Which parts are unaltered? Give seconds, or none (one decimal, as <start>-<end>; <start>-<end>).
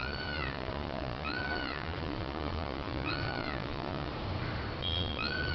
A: 4.1-4.8